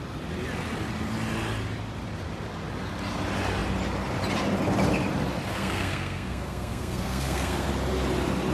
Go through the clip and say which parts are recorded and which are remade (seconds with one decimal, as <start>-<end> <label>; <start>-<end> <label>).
0.0-5.5 recorded; 5.5-7.7 remade; 7.7-8.5 recorded